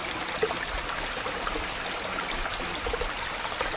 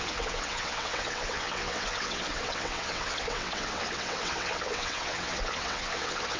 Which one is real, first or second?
first